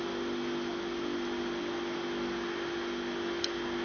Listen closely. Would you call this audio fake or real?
real